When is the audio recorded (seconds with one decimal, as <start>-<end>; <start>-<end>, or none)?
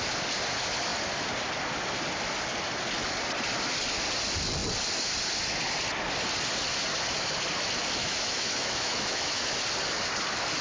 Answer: 0.0-8.0; 9.6-10.6